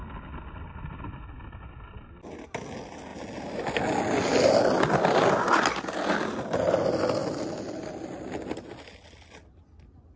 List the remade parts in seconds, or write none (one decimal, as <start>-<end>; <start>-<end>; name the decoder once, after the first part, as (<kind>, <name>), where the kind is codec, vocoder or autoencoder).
none